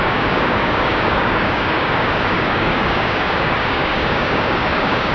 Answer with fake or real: fake